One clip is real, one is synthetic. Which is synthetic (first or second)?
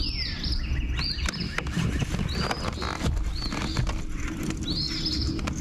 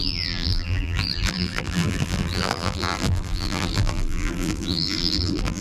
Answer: second